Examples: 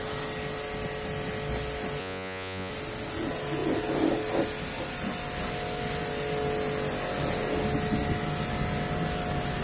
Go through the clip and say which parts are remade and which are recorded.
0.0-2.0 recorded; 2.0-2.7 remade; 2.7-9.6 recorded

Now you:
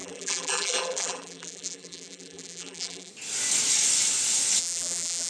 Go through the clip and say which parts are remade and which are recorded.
0.0-3.1 remade; 3.1-4.6 recorded; 4.6-5.3 remade

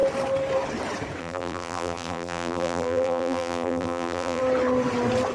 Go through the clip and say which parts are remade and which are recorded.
0.0-1.2 recorded; 1.2-4.4 remade; 4.4-5.3 recorded

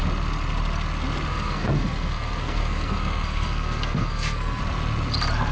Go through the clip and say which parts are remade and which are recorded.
0.0-1.3 recorded; 1.3-4.6 remade; 4.6-5.5 recorded

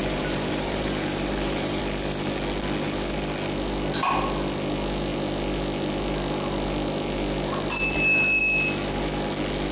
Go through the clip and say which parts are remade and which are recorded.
0.0-1.8 remade; 1.8-9.7 recorded